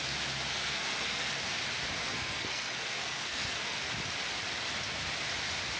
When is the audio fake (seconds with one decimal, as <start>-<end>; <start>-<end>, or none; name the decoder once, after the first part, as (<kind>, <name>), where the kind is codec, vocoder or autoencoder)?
0.5-1.3 (codec, SNAC); 2.0-3.9